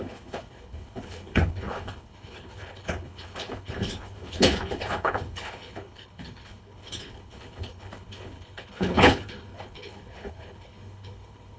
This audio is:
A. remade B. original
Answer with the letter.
A